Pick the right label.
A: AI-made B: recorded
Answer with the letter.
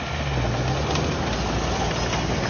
B